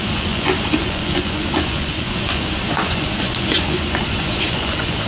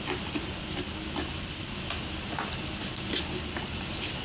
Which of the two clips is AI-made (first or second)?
first